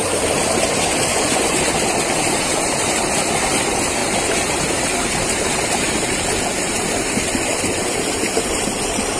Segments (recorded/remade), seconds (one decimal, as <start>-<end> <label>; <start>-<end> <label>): 0.0-1.1 recorded; 1.1-1.6 remade; 1.6-9.2 recorded